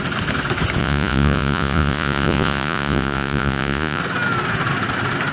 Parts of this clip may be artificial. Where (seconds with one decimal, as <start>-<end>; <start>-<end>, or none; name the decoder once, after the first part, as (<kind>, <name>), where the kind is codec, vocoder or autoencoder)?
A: 0.8-4.0 (vocoder, Vocos)